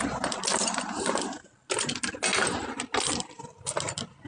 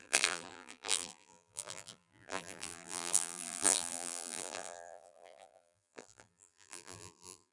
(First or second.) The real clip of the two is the first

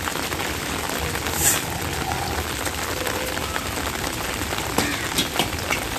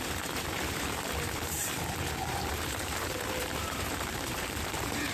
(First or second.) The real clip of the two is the first